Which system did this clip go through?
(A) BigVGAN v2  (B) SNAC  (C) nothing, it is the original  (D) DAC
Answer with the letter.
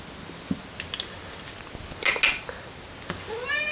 C